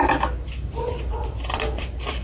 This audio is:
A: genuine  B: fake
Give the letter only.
B